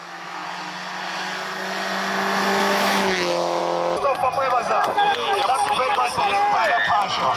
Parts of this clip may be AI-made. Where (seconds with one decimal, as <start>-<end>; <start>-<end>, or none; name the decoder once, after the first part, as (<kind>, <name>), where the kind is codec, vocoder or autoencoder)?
0.0-0.4 (autoencoder, DAC-VAE); 2.6-3.6